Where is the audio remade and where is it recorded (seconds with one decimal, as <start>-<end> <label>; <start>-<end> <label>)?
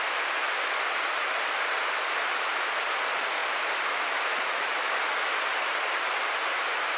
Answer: 0.0-7.0 recorded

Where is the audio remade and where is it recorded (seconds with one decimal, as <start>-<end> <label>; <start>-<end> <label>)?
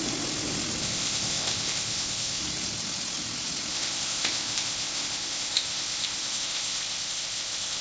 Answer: 0.0-0.8 recorded; 0.8-2.4 remade; 2.4-3.7 recorded; 3.7-7.8 remade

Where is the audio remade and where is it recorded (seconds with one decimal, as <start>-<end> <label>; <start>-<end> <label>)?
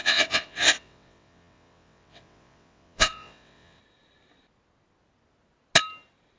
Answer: 0.0-3.8 remade; 3.8-6.4 recorded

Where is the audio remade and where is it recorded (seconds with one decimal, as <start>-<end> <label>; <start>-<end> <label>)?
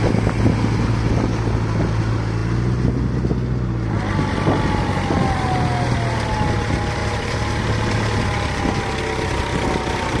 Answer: 0.0-10.2 recorded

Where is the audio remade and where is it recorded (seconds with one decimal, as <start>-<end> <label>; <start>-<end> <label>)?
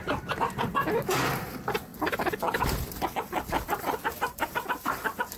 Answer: 0.0-1.9 recorded; 1.9-5.4 remade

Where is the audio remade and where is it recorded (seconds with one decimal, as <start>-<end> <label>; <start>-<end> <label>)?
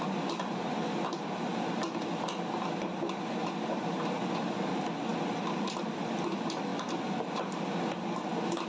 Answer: 0.0-3.4 recorded; 3.4-4.0 remade; 4.0-8.7 recorded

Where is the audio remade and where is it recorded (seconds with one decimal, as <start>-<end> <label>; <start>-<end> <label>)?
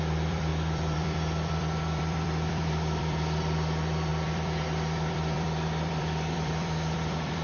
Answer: 0.0-7.4 remade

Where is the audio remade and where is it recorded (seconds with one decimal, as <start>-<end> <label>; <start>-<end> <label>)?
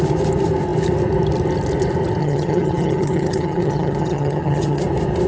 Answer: 0.0-2.2 recorded; 2.2-4.8 remade; 4.8-5.3 recorded